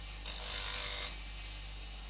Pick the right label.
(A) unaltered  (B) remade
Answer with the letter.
A